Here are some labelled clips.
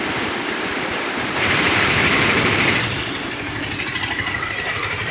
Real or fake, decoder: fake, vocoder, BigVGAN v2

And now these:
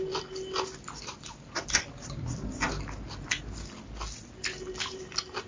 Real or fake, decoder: real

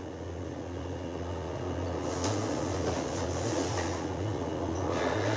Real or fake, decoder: fake, vocoder, Vocos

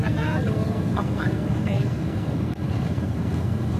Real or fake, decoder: fake, codec, SNAC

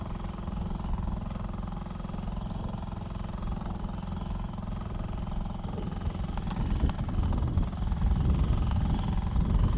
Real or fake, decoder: real